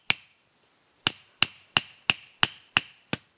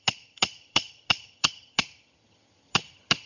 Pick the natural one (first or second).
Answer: first